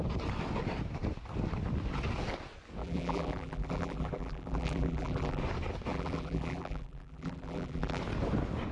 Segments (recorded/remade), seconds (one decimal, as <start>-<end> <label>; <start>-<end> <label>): 0.0-2.8 recorded; 2.8-5.4 remade; 5.4-5.9 recorded; 5.9-8.0 remade; 8.0-8.7 recorded